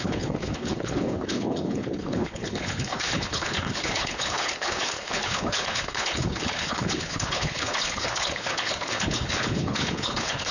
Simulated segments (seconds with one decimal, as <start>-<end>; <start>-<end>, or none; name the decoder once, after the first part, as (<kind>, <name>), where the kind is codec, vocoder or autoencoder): 0.0-10.5 (codec, HILCodec)